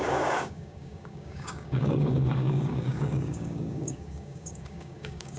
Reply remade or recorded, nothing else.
remade